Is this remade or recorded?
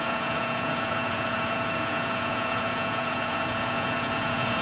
remade